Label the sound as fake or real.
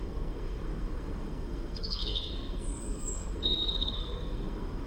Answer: fake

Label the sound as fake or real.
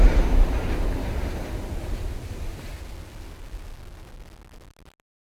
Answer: real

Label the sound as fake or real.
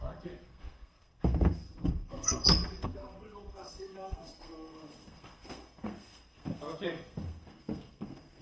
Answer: fake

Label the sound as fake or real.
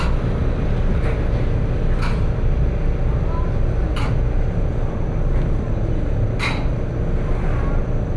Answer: real